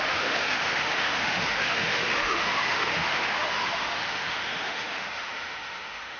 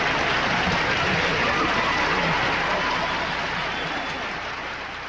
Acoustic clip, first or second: second